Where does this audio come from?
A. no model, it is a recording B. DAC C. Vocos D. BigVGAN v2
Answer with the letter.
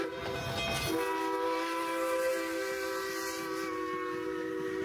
A